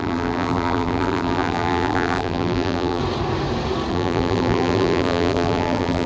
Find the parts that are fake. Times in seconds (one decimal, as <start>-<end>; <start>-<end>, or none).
0.0-3.0; 3.9-6.1